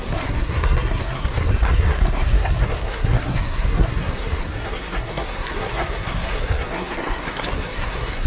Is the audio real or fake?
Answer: fake